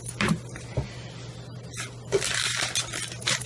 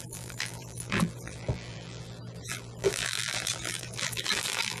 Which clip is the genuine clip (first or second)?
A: first